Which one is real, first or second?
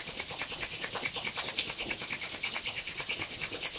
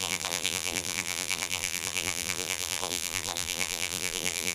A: first